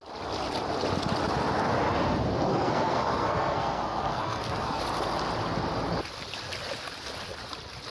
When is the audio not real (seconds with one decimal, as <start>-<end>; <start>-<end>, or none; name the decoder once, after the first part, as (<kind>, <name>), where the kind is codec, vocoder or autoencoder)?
2.5-4.8 (codec, SNAC)